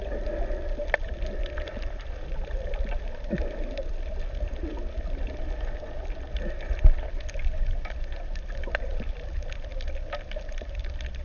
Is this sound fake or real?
real